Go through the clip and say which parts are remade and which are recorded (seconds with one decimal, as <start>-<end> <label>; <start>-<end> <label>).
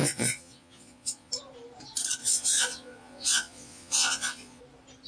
0.0-1.3 remade; 1.3-2.2 recorded; 2.2-4.6 remade; 4.6-5.1 recorded